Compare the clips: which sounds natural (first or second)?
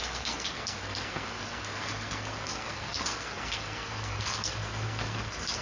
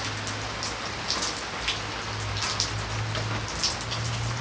second